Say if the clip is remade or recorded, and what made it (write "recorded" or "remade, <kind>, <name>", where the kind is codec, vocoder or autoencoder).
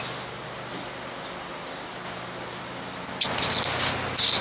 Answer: recorded